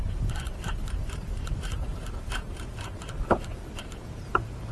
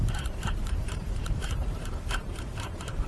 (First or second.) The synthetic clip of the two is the second